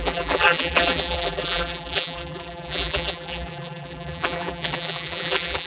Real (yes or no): no